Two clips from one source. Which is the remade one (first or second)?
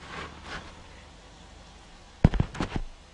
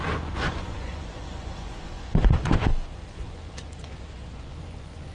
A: second